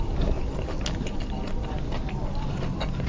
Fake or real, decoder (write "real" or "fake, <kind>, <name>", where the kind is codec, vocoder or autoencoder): real